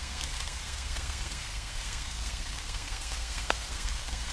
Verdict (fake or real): fake